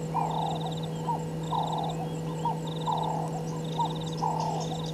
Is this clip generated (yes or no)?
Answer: no